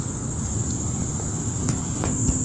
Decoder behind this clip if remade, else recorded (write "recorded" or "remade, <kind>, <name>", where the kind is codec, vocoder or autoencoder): recorded